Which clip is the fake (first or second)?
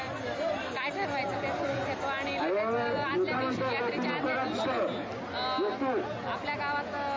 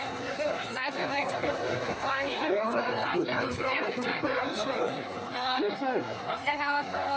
second